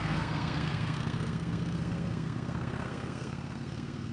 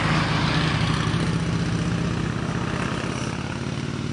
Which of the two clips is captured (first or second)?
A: second